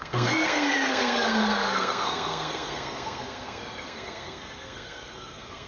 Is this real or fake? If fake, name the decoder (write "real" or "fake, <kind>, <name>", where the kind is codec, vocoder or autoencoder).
fake, codec, SNAC